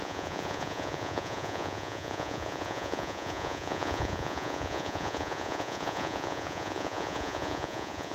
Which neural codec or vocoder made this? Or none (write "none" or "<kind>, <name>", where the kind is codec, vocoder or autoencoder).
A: vocoder, Vocos